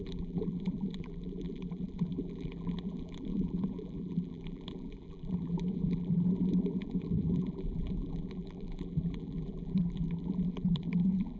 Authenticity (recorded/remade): remade